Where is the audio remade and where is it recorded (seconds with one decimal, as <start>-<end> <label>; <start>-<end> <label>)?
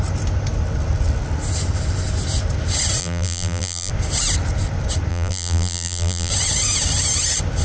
0.0-3.0 recorded; 3.0-3.9 remade; 3.9-5.1 recorded; 5.1-6.3 remade; 6.3-7.6 recorded